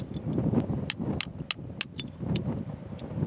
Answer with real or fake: real